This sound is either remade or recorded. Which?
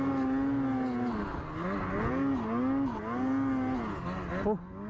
recorded